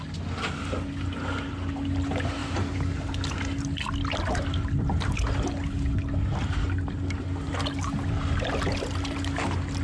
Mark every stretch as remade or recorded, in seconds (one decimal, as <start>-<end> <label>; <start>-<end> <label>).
0.0-9.8 recorded